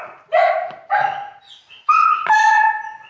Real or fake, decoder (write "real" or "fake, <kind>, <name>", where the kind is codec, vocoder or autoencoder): real